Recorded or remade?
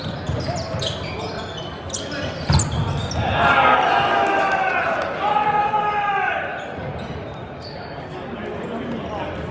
recorded